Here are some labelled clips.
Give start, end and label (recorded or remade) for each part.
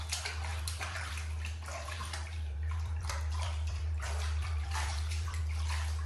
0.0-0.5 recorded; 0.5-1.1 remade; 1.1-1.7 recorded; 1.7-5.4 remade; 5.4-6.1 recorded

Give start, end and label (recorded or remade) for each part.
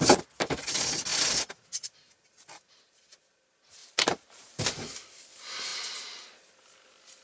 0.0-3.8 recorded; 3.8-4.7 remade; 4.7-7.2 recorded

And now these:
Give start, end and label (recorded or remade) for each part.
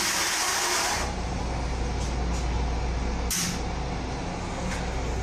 0.0-0.5 recorded; 0.5-1.4 remade; 1.4-5.2 recorded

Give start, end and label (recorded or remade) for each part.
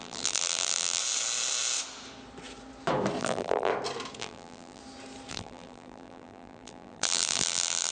0.0-1.0 remade; 1.0-3.2 recorded; 3.2-3.7 remade; 3.7-4.2 recorded; 4.2-4.8 remade; 4.8-5.3 recorded; 5.3-7.9 remade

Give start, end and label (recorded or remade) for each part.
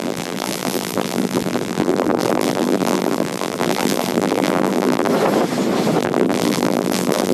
0.0-5.1 remade; 5.1-6.0 recorded; 6.0-7.3 remade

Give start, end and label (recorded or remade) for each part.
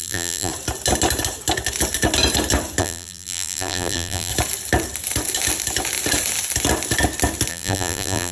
0.0-0.5 remade; 0.5-2.8 recorded; 2.8-4.3 remade; 4.3-7.5 recorded; 7.5-8.3 remade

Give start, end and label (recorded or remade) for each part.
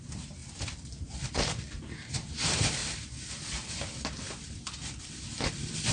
0.0-0.4 remade; 0.4-1.3 recorded; 1.3-2.8 remade; 2.8-5.0 recorded; 5.0-5.9 remade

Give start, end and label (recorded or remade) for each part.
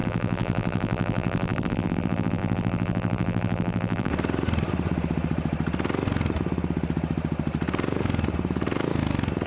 0.0-4.1 remade; 4.1-9.5 recorded